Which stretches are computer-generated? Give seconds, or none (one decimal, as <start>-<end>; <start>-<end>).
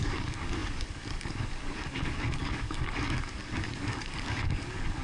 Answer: 0.0-5.0